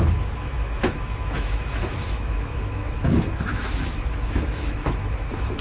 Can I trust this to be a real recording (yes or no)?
no